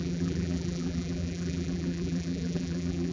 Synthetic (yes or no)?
yes